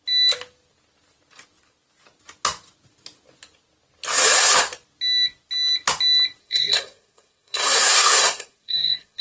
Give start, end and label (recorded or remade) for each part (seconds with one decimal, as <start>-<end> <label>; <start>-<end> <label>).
0.0-6.4 recorded; 6.4-9.2 remade